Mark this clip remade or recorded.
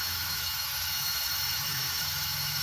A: remade